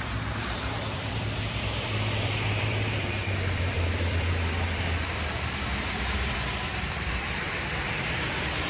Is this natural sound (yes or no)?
no